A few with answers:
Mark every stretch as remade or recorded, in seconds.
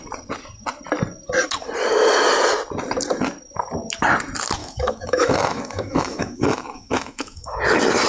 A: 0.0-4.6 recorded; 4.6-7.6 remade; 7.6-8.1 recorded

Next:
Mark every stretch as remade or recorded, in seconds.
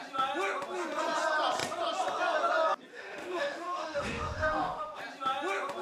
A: 0.0-2.9 recorded; 2.9-5.0 remade; 5.0-5.8 recorded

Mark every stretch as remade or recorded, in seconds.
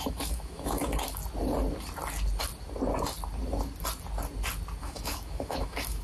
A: 0.0-1.2 remade; 1.2-4.8 recorded; 4.8-6.0 remade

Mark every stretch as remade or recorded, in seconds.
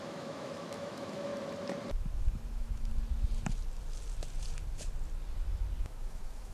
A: 0.0-1.3 remade; 1.3-2.5 recorded; 2.5-2.9 remade; 2.9-5.8 recorded; 5.8-6.5 remade